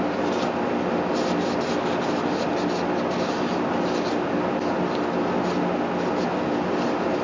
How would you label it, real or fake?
real